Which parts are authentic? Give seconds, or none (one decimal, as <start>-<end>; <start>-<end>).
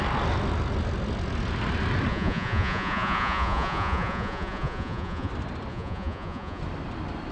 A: 0.0-2.1; 5.3-5.7; 6.6-7.3